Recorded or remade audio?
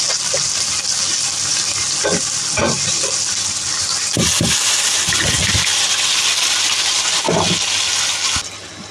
recorded